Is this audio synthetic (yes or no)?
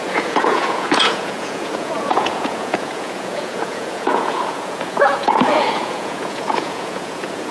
yes